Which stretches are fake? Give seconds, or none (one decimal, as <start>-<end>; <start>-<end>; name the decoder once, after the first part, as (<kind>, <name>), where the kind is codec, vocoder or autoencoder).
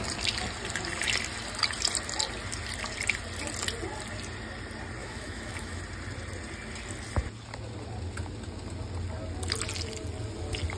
5.0-5.8 (autoencoder, DAC-VAE)